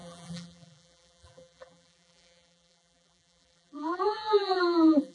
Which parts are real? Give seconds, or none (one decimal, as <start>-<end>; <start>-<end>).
none